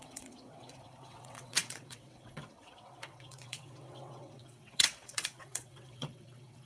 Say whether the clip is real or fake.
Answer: fake